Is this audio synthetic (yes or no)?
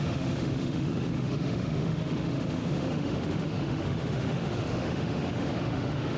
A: yes